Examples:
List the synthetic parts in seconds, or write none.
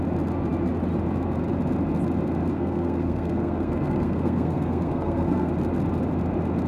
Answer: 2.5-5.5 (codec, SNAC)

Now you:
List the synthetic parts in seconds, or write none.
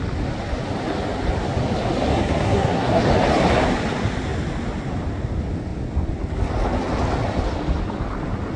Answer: 2.1-3.0 (codec, SNAC)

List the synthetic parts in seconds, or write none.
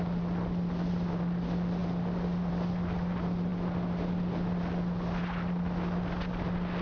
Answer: none